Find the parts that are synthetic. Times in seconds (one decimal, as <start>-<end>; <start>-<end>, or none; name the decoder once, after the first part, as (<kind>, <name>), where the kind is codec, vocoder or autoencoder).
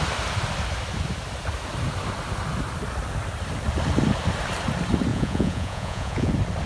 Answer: 5.1-6.3 (vocoder, Vocos)